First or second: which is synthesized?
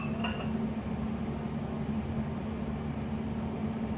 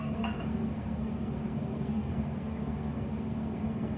second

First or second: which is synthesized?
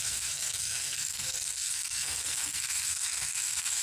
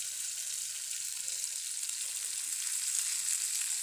first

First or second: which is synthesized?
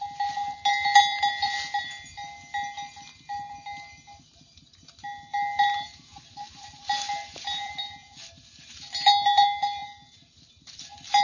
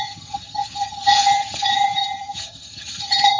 second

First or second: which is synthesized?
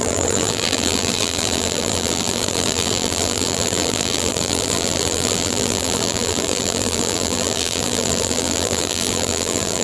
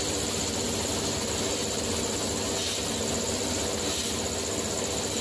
first